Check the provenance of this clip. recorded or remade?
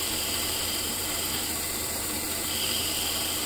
remade